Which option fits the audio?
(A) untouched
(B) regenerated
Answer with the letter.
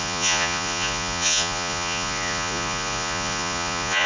B